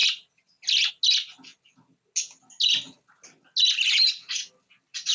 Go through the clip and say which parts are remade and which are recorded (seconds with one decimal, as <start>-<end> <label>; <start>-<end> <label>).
0.0-5.1 recorded